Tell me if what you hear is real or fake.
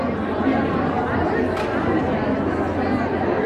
real